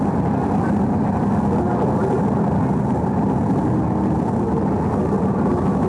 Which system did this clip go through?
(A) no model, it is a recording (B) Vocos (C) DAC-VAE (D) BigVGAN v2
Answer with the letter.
A